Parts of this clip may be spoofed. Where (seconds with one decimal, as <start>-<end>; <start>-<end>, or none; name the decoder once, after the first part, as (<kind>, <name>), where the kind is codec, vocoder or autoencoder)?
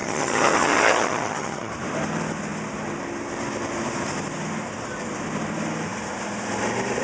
0.0-1.7 (vocoder, HiFi-GAN)